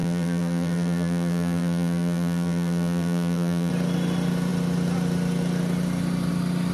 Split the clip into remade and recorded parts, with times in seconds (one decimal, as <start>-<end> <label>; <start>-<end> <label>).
0.0-3.7 remade; 3.7-6.7 recorded